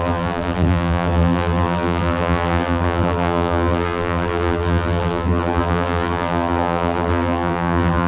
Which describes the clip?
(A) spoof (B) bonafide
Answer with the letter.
A